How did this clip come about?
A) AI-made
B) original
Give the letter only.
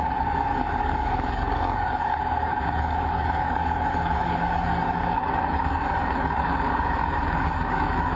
A